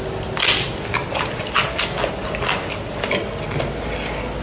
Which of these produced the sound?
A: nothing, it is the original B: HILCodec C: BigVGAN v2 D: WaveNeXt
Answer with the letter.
A